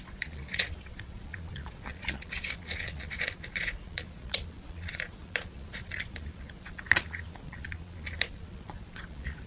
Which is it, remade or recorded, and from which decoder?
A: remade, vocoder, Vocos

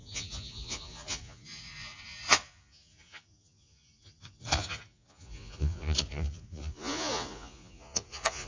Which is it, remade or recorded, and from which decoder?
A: remade, vocoder, Vocos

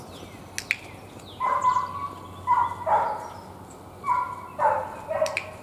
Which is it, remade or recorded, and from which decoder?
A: recorded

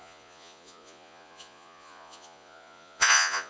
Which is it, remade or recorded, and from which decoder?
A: remade, vocoder, Vocos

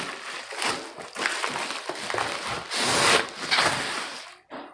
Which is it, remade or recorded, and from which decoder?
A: recorded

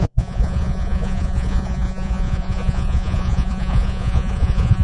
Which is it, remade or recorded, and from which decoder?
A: remade, vocoder, Vocos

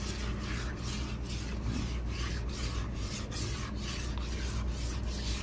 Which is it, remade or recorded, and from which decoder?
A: recorded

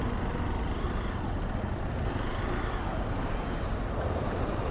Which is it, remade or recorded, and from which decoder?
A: recorded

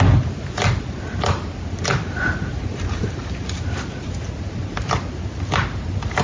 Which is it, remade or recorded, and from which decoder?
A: recorded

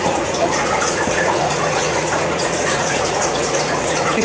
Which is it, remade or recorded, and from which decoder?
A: remade, vocoder, Vocos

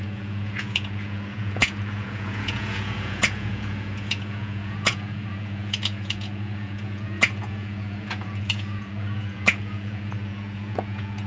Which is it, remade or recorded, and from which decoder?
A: remade, vocoder, Vocos